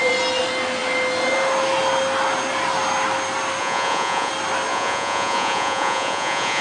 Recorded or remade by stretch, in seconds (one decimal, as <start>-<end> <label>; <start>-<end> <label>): 0.0-3.6 recorded; 3.6-4.3 remade; 4.3-4.7 recorded; 4.7-6.6 remade